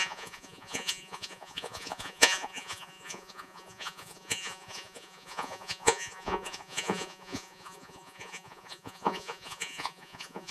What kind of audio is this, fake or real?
fake